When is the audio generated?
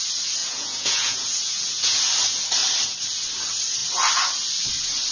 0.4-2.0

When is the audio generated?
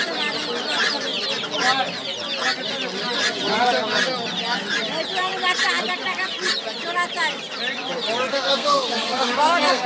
8.3-9.9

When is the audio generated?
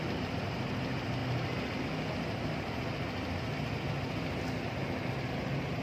none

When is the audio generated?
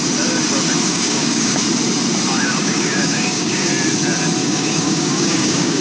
0.9-1.6; 2.5-3.7; 4.4-5.8